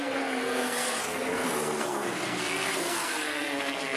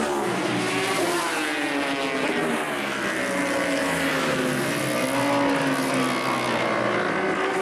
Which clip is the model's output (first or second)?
first